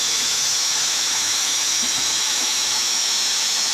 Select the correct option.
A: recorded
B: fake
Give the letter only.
B